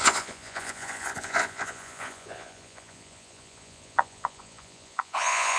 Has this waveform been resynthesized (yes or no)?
yes